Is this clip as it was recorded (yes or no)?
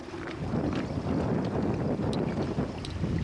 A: yes